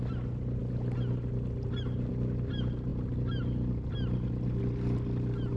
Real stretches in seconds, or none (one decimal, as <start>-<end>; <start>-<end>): 0.0-5.6